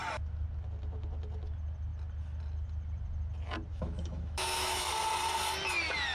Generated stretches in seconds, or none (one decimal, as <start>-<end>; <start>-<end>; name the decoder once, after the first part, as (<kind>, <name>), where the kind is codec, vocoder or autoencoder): 3.7-4.9 (autoencoder, DAC-VAE)